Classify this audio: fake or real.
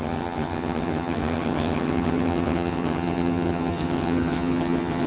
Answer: fake